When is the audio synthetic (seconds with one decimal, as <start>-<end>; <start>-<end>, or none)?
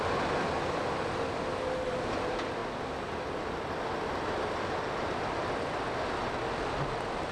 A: none